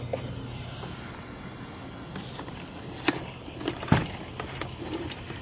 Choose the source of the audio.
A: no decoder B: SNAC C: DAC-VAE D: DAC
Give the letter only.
A